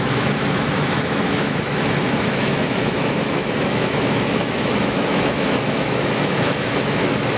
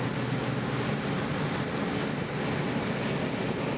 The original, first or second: second